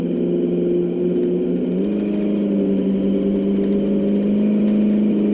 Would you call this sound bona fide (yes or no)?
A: yes